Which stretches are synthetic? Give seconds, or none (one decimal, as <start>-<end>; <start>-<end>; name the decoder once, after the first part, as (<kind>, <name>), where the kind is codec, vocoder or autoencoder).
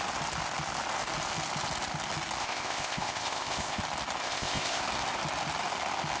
2.4-3.8 (codec, ZipCodec); 4.2-4.8